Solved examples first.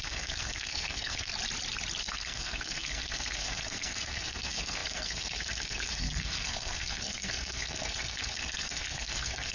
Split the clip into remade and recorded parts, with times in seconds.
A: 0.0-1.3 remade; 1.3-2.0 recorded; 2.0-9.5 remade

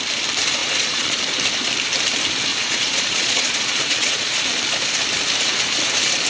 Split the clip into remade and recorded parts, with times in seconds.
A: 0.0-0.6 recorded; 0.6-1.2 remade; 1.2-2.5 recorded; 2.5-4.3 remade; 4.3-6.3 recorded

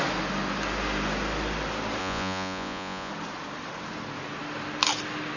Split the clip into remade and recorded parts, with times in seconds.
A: 0.0-2.0 recorded; 2.0-3.1 remade; 3.1-5.4 recorded

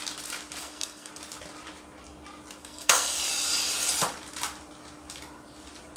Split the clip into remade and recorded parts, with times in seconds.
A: 0.0-0.6 recorded; 0.6-1.1 remade; 1.1-2.6 recorded; 2.6-3.2 remade; 3.2-6.0 recorded

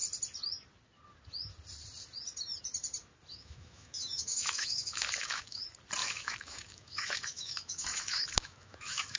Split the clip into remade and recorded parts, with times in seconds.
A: 0.0-3.3 recorded; 3.3-5.6 remade; 5.6-6.0 recorded; 6.0-9.2 remade

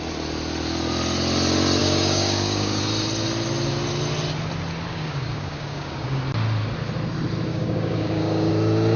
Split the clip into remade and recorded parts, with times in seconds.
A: 0.0-1.8 recorded; 1.8-2.8 remade; 2.8-4.9 recorded; 4.9-6.2 remade; 6.2-7.5 recorded; 7.5-8.5 remade; 8.5-9.0 recorded

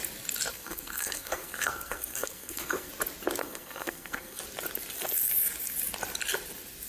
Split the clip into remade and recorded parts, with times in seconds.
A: 0.0-0.5 recorded; 0.5-2.9 remade; 2.9-3.4 recorded; 3.4-4.4 remade; 4.4-6.9 recorded